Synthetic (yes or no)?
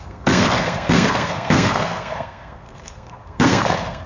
yes